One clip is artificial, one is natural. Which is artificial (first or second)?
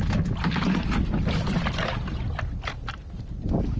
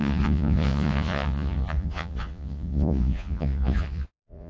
second